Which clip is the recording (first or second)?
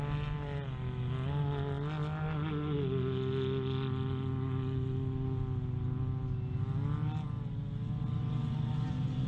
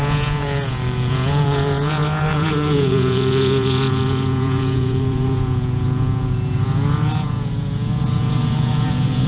first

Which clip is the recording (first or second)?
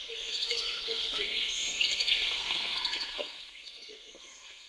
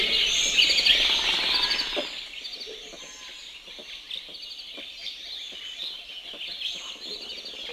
second